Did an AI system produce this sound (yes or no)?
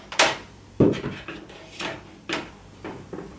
yes